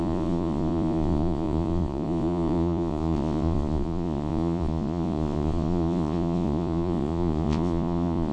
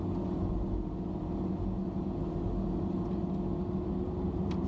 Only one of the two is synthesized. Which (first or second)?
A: first